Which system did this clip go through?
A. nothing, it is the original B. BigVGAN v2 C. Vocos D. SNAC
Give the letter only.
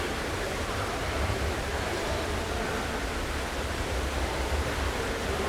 A